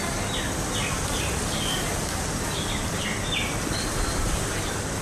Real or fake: real